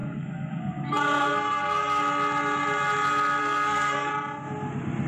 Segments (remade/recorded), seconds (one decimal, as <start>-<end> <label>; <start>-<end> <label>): 0.0-2.0 remade; 2.0-3.4 recorded; 3.4-4.1 remade; 4.1-5.1 recorded